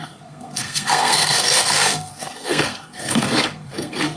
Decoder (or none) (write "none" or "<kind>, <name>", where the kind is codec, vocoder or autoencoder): codec, SNAC